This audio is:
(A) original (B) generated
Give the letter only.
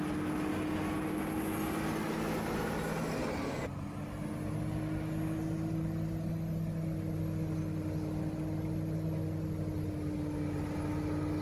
A